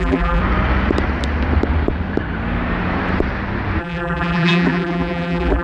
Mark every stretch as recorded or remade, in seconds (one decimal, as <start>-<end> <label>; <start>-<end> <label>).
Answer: 0.0-0.4 remade; 0.4-3.8 recorded; 3.8-5.6 remade